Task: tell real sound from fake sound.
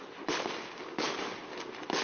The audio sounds real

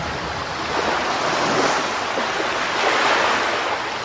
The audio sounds real